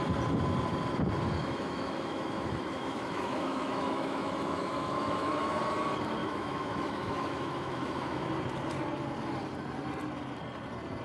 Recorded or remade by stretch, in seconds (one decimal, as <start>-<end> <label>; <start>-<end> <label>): 0.0-1.4 recorded; 1.4-5.6 remade; 5.6-6.2 recorded; 6.2-8.3 remade; 8.3-11.0 recorded